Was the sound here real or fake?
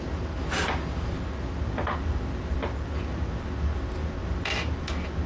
real